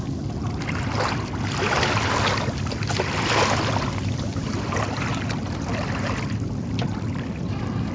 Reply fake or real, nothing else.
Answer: real